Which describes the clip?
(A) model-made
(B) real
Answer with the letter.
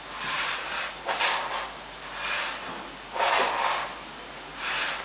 B